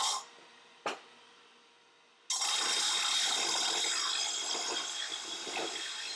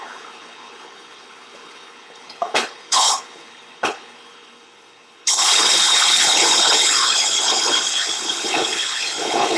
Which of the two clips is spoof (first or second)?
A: second